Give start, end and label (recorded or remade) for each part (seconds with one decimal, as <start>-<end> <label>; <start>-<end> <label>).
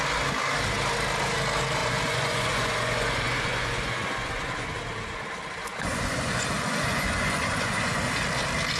0.0-1.8 recorded; 1.8-4.7 remade; 4.7-5.6 recorded; 5.6-8.1 remade; 8.1-8.8 recorded